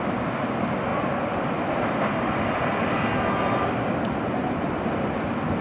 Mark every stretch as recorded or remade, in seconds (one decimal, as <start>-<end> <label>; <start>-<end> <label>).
0.0-5.6 recorded